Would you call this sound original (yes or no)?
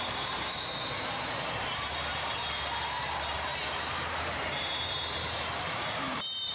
no